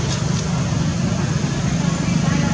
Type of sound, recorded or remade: recorded